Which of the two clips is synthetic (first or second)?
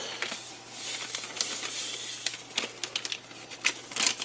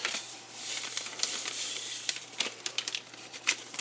second